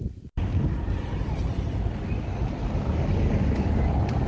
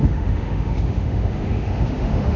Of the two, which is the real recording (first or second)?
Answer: first